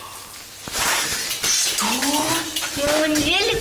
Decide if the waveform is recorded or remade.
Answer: recorded